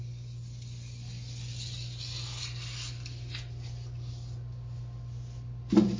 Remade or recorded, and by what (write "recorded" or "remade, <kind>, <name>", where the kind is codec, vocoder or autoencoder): recorded